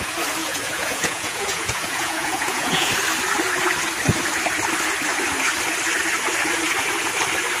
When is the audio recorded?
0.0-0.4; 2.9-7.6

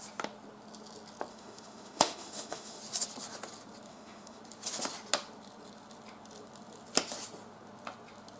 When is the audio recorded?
0.0-1.3; 2.8-3.9; 4.4-8.4

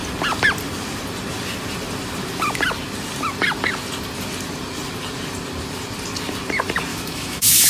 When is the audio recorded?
0.0-6.9

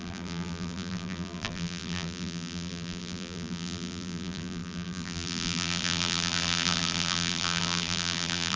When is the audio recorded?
none

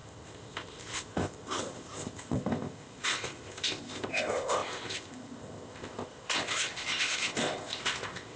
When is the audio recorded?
none